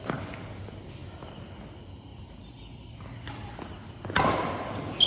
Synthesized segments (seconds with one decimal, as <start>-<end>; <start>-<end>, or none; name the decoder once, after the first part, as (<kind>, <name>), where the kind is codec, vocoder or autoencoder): none